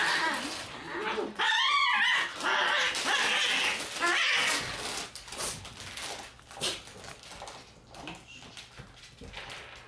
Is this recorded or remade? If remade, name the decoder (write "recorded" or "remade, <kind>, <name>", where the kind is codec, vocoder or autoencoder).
recorded